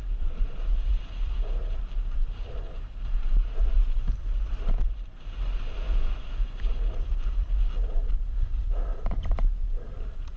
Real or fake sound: fake